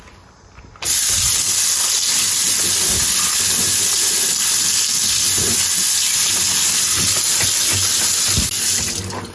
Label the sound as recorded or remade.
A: recorded